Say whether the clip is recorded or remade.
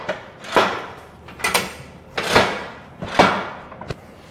recorded